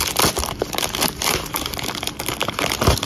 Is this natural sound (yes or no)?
no